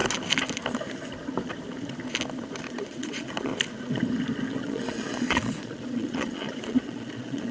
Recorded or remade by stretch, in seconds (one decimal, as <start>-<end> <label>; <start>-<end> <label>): 0.0-2.7 recorded; 2.7-3.5 remade; 3.5-4.5 recorded; 4.5-7.5 remade